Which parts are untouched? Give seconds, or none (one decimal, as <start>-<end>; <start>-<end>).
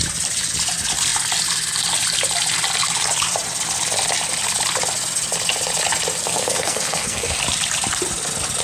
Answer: 0.0-6.2; 7.4-8.6